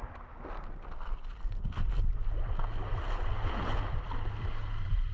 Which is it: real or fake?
real